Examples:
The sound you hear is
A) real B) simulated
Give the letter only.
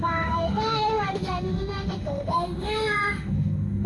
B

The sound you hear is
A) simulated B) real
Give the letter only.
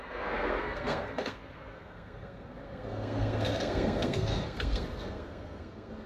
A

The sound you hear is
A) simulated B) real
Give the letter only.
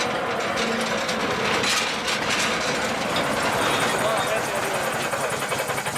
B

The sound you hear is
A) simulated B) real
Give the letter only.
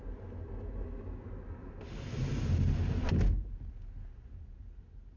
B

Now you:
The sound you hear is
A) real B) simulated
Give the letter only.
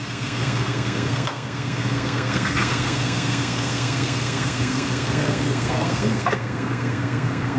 B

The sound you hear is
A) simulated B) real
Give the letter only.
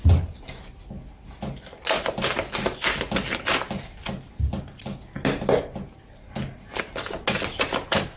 B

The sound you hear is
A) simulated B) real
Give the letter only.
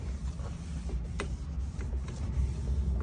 B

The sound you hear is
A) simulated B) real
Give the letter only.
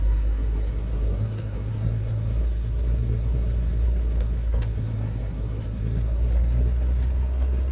A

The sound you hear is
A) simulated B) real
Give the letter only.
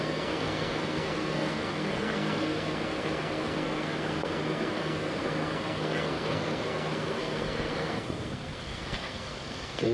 A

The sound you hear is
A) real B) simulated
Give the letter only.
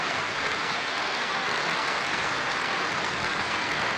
B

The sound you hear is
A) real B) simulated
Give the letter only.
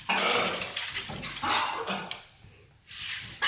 A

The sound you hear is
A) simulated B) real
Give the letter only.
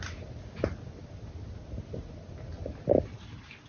B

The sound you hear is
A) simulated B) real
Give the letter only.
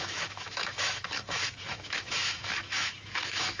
A